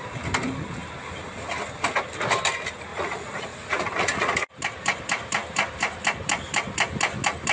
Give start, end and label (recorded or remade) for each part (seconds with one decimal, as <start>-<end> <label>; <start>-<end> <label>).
0.0-2.9 recorded; 2.9-4.5 remade; 4.5-7.5 recorded